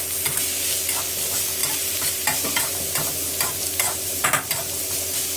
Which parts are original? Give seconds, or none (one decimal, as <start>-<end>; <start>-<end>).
0.0-1.6; 4.8-5.4